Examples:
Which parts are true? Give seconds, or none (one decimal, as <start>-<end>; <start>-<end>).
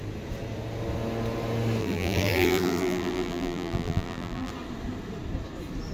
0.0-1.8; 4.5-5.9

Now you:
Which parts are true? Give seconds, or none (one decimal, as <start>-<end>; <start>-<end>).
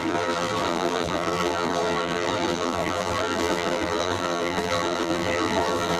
none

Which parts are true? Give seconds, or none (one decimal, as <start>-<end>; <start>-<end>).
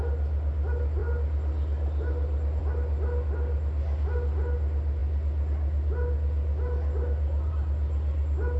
0.0-8.6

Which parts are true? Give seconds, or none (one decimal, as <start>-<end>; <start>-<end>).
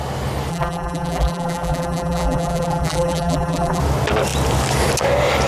0.0-0.5; 3.8-5.5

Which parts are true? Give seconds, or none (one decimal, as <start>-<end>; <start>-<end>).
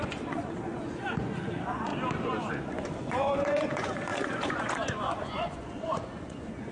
1.9-2.5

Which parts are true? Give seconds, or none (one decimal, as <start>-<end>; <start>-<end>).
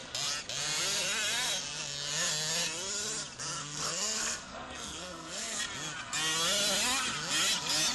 0.0-3.6; 5.6-7.9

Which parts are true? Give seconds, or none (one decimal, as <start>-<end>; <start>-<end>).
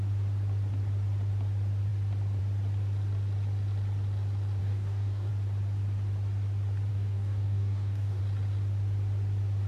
0.0-4.6; 5.3-6.9; 8.2-9.7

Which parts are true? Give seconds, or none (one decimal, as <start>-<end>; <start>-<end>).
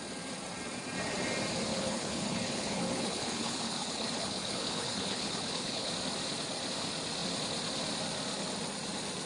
0.0-1.7; 5.9-9.3